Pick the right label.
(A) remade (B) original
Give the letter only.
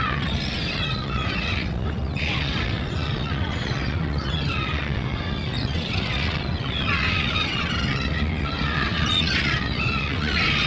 A